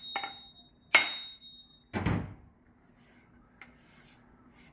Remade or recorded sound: recorded